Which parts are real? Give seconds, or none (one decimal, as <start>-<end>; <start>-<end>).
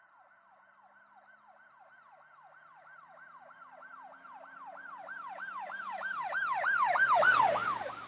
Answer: 0.0-2.7; 7.4-8.1